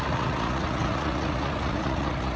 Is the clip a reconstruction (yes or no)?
yes